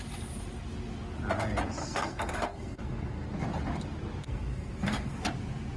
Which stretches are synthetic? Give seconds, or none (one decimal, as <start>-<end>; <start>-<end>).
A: 1.8-3.3; 4.2-5.2